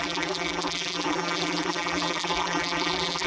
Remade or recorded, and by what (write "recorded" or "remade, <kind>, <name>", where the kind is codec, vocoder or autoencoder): remade, vocoder, BigVGAN v2